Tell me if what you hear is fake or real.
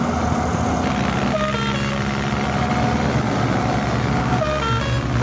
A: real